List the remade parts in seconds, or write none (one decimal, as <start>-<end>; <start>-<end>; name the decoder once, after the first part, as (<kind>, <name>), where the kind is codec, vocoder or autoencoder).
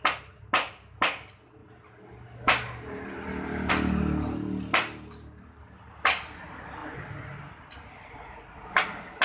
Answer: 1.6-3.7 (vocoder, BigVGAN v2)